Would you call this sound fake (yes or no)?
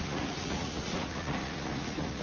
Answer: yes